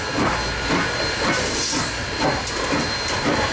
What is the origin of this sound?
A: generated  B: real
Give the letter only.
A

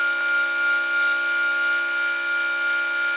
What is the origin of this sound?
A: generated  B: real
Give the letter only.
B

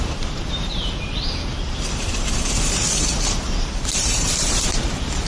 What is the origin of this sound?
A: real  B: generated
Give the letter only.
B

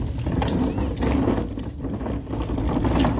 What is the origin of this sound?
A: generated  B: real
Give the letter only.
B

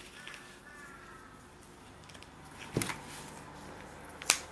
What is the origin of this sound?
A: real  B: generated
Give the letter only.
B